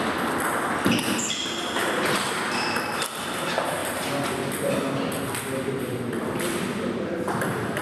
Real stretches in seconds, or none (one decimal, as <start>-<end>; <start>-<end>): 0.0-1.8; 2.4-3.8; 4.3-7.8